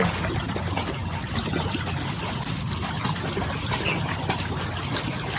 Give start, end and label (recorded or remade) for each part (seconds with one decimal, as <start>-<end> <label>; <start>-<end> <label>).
0.0-5.4 recorded